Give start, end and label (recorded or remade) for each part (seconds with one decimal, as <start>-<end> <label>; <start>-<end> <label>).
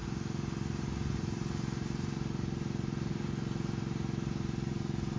0.0-5.2 remade